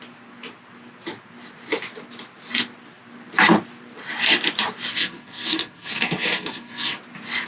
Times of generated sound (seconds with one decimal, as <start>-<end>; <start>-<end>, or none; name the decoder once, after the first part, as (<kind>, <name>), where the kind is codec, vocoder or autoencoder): 4.9-7.0 (codec, SNAC)